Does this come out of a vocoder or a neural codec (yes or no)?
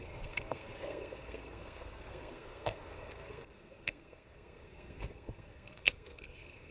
yes